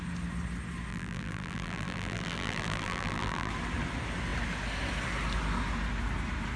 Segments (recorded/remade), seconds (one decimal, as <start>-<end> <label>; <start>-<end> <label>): 0.0-0.9 recorded; 0.9-3.5 remade; 3.5-6.6 recorded